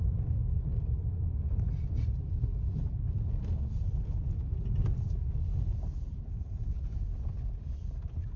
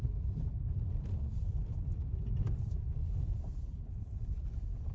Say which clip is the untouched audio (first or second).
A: first